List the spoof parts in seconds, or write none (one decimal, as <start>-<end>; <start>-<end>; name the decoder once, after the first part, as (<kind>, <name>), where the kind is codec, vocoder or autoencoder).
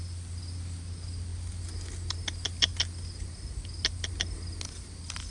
none